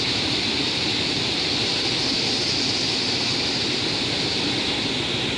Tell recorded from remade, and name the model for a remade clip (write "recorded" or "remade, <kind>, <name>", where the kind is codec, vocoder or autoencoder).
recorded